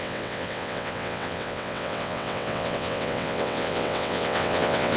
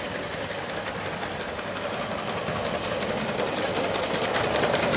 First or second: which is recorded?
second